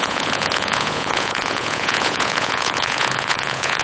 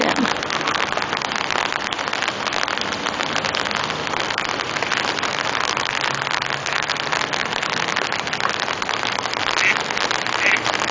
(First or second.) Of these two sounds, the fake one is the first